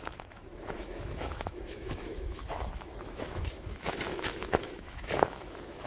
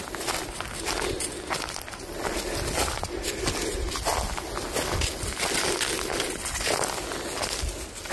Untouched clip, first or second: second